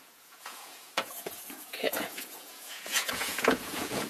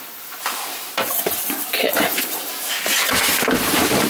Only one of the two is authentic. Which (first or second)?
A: second